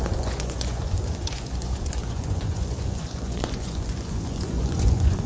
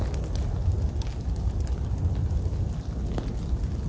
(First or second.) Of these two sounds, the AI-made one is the first